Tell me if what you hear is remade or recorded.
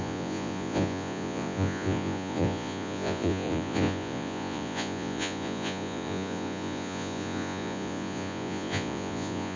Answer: remade